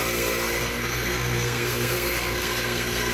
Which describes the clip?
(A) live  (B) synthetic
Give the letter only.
B